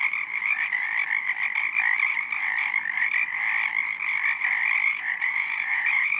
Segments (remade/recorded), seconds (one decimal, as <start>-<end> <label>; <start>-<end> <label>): 0.0-4.9 recorded; 4.9-6.2 remade